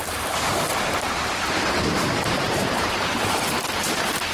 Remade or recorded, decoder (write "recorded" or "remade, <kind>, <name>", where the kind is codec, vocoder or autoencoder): remade, vocoder, BigVGAN v2